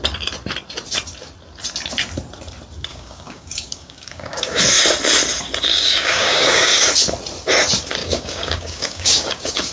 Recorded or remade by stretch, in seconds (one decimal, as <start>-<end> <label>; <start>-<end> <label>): 0.0-2.9 recorded; 2.9-4.6 remade; 4.6-5.7 recorded; 5.7-6.9 remade; 6.9-8.0 recorded; 8.0-9.7 remade

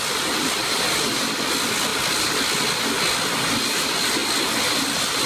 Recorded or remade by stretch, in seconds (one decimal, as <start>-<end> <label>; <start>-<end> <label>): 0.0-5.3 recorded

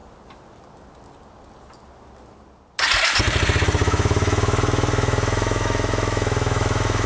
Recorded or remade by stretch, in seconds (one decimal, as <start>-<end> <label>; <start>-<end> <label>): 0.0-3.8 recorded; 3.8-7.1 remade

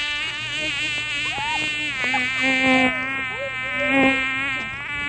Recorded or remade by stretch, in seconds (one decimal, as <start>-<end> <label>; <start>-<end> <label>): 0.0-0.7 remade; 0.7-5.1 recorded

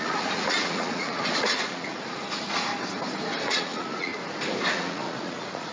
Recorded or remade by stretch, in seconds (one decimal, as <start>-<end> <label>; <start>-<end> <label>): 0.0-2.7 remade; 2.7-3.4 recorded; 3.4-4.1 remade; 4.1-4.7 recorded; 4.7-5.7 remade

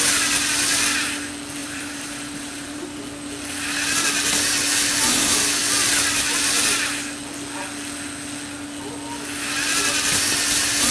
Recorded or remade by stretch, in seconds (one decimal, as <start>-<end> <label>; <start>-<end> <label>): 0.0-1.6 recorded; 1.6-3.0 remade; 3.0-10.9 recorded